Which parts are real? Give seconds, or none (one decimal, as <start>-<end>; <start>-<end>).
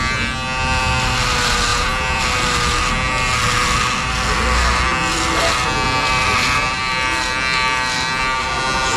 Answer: 0.0-1.7; 2.2-9.0